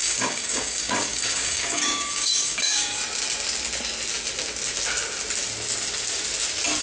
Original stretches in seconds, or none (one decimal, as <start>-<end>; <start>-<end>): 3.0-6.8